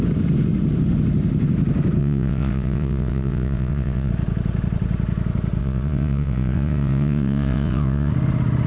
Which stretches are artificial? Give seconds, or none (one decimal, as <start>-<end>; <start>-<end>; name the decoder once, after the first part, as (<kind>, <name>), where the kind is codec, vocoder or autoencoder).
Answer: 2.0-4.1 (vocoder, WaveNeXt); 5.6-8.1